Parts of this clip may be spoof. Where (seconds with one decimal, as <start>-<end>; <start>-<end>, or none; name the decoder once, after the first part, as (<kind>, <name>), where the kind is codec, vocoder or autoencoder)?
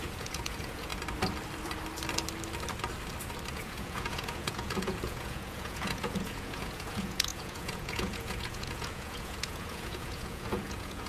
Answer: 0.0-0.9 (vocoder, Vocos); 3.5-11.1